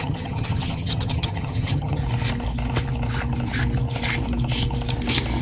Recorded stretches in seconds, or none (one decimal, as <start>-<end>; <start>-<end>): 2.0-5.4